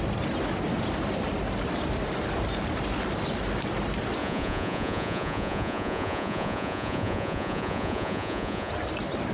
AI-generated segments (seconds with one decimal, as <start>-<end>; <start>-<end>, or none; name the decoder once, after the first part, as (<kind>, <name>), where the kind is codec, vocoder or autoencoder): 4.2-8.7 (vocoder, Vocos)